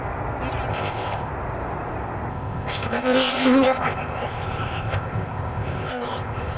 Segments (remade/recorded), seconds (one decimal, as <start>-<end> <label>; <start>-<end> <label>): 0.0-0.7 recorded; 0.7-1.3 remade; 1.3-2.3 recorded; 2.3-6.6 remade